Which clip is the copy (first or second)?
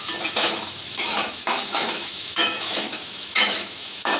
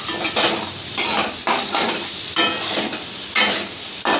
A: first